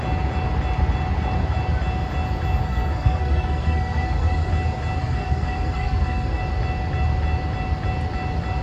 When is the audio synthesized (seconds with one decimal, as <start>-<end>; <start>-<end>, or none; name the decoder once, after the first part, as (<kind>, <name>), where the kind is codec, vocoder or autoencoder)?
2.6-4.5 (codec, SNAC); 5.0-6.4